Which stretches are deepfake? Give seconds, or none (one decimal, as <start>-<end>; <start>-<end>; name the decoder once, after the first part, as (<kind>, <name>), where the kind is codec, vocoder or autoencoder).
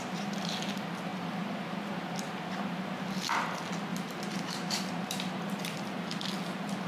3.9-5.2 (vocoder, BigVGAN v2)